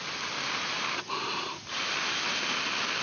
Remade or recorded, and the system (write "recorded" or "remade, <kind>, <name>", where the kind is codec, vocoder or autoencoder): recorded